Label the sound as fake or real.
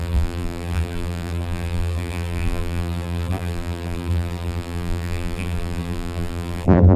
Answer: fake